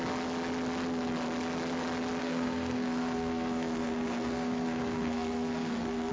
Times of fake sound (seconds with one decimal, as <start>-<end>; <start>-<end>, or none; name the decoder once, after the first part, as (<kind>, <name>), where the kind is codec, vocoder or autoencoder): 2.2-6.1 (codec, SNAC)